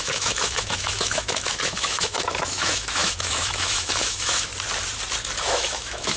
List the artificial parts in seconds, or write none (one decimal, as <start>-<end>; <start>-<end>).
0.0-4.5; 5.4-6.2